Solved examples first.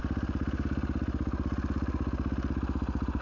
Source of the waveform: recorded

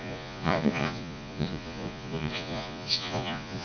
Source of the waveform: remade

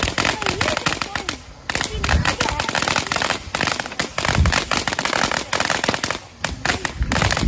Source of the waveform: recorded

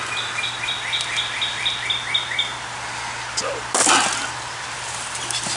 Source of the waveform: recorded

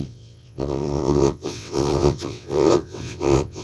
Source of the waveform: remade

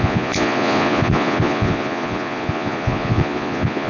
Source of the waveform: remade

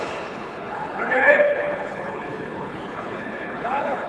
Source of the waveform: remade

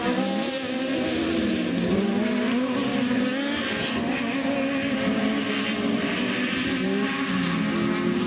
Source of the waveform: recorded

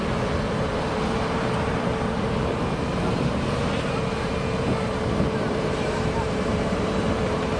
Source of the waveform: remade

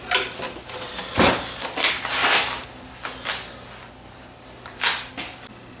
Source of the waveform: recorded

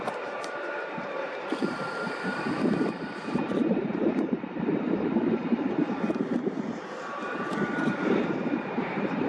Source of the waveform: remade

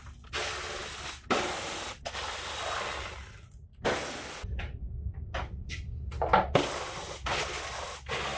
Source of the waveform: recorded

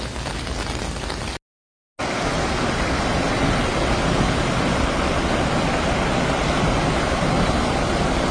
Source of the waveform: recorded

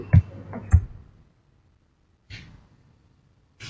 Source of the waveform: recorded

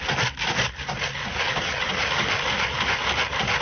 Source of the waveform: recorded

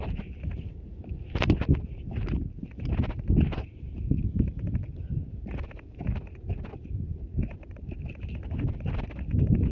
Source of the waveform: recorded